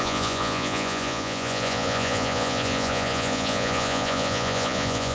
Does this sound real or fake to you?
fake